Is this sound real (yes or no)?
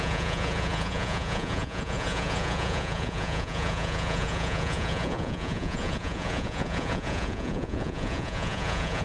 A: no